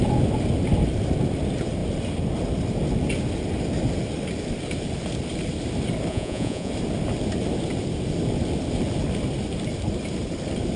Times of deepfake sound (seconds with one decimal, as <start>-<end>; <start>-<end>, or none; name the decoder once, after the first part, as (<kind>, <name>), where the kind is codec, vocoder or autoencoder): 6.1-6.7 (vocoder, Vocos)